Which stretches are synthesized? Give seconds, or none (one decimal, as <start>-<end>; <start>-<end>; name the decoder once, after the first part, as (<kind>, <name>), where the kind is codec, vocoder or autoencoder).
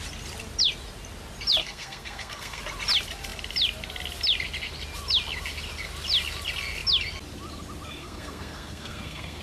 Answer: 1.6-2.6 (codec, SNAC); 8.0-9.4